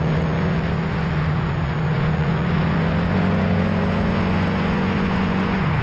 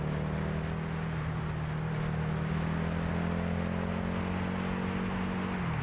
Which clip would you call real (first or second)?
second